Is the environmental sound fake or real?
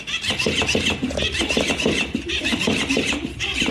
real